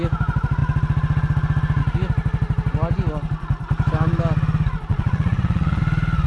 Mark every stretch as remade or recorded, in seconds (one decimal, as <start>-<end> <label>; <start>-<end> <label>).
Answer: 0.0-4.9 recorded; 4.9-5.8 remade; 5.8-6.3 recorded